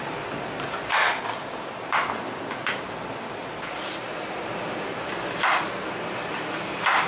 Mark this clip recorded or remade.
recorded